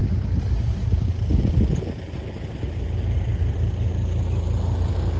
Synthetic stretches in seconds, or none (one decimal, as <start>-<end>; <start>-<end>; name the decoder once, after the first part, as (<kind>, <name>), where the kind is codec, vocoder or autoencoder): none